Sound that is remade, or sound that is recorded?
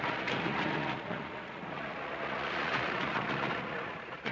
remade